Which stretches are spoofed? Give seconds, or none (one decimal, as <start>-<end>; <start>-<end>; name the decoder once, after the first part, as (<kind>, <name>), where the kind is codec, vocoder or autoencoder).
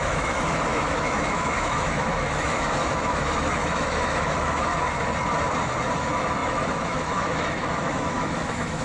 0.0-4.7 (autoencoder, DAC-VAE); 5.9-8.8